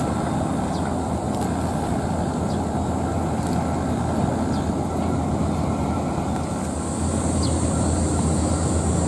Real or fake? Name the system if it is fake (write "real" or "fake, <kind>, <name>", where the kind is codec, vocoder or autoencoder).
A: real